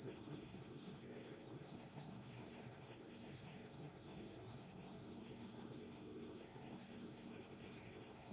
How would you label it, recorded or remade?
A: remade